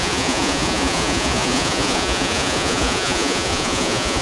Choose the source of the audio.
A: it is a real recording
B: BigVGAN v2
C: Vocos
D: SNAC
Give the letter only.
C